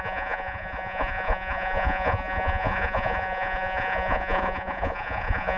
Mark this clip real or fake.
fake